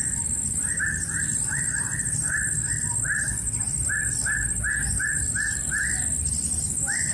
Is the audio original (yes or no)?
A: yes